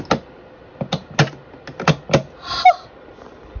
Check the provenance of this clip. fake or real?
real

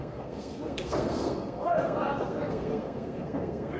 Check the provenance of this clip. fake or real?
fake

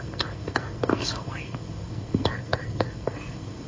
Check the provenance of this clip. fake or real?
fake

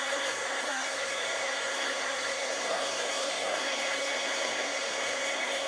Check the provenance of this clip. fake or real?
fake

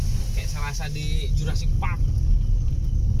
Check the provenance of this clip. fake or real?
real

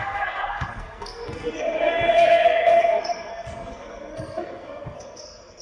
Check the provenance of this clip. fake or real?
fake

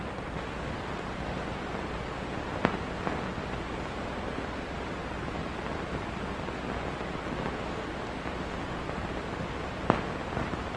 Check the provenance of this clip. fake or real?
real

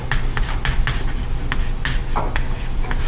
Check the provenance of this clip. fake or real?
real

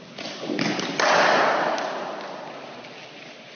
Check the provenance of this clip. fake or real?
real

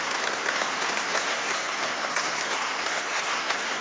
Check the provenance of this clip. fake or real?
fake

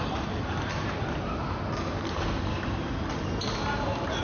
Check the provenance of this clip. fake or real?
real